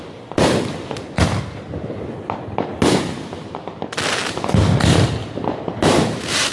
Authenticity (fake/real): real